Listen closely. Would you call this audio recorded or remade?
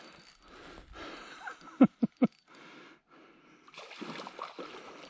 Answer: recorded